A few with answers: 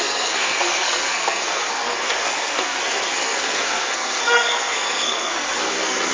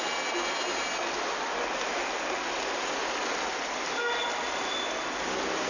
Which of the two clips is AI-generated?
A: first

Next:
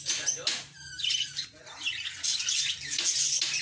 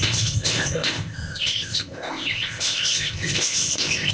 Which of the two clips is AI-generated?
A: second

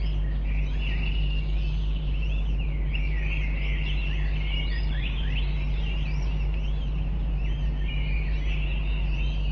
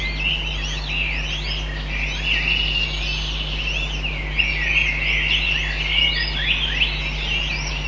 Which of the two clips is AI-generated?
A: first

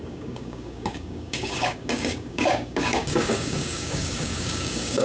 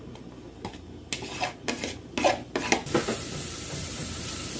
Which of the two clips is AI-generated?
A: first